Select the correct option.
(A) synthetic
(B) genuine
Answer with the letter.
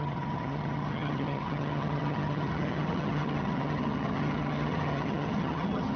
A